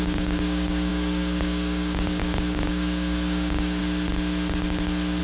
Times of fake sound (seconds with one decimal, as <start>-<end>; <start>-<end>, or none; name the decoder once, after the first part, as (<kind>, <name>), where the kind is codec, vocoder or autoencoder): 0.0-3.8 (codec, DAC)